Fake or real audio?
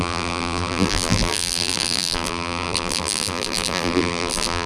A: fake